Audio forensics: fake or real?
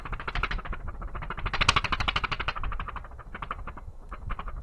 real